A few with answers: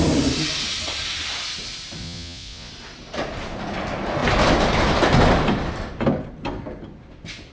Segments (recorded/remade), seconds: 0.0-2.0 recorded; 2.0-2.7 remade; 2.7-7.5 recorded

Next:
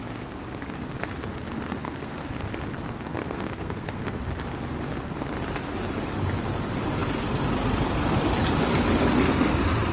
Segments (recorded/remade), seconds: 0.0-1.7 recorded; 1.7-2.3 remade; 2.3-3.1 recorded; 3.1-4.2 remade; 4.2-9.9 recorded

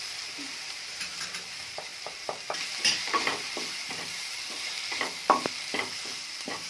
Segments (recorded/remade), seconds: 0.0-5.2 remade; 5.2-5.9 recorded; 5.9-6.7 remade

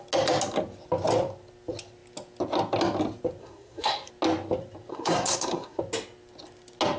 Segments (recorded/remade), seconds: 0.0-3.4 recorded; 3.4-4.1 remade; 4.1-4.9 recorded; 4.9-5.8 remade; 5.8-7.0 recorded